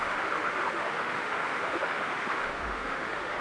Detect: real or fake fake